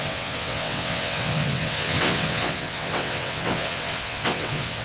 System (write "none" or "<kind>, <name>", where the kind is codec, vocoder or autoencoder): vocoder, WaveNeXt